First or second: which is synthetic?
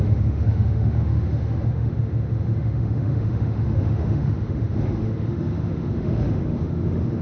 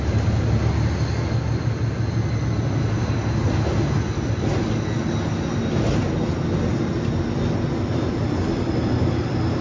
first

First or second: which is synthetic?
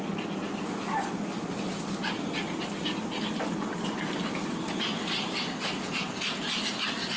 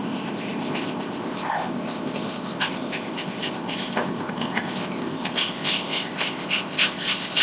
second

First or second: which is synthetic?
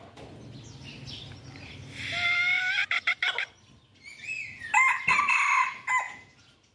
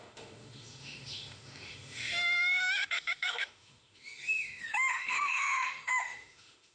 second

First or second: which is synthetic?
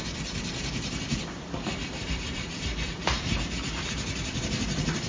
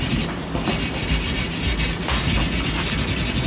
first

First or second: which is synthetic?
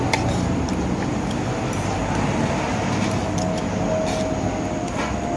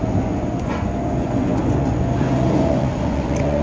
second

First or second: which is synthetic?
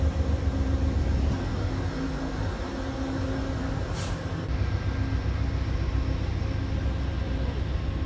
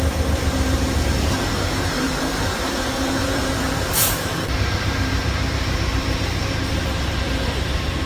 second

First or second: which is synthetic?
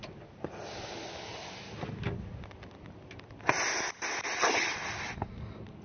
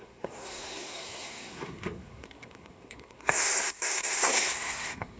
second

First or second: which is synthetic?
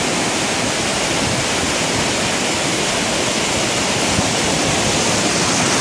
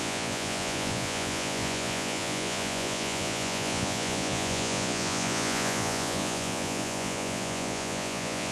second